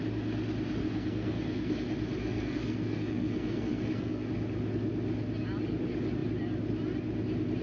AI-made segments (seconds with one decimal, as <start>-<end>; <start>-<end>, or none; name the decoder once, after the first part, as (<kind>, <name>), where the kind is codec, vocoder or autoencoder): 0.8-1.7 (codec, SNAC); 2.2-4.3